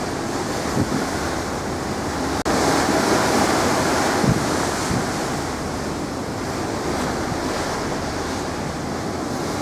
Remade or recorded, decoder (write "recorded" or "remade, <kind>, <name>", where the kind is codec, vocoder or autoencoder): recorded